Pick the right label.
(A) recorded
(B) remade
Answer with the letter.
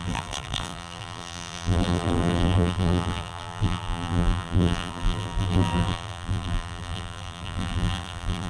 B